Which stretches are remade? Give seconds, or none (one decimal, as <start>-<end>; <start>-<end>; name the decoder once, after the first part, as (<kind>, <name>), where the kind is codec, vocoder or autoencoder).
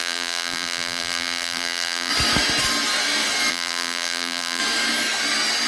0.0-2.1 (vocoder, BigVGAN v2); 3.5-4.6